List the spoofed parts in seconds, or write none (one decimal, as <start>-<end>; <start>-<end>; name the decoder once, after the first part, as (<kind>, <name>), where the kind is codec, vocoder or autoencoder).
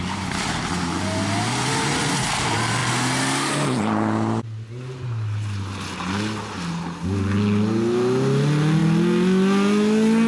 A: none